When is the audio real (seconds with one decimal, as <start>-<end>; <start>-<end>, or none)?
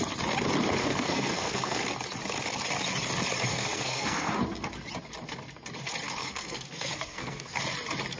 0.0-0.8; 1.8-3.5; 4.3-6.2; 7.6-8.2